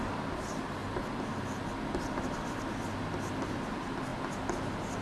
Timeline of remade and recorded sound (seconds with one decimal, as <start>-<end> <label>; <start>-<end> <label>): 0.0-5.0 recorded